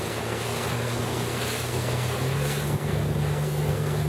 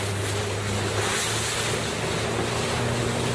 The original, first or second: second